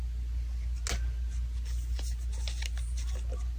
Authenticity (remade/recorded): recorded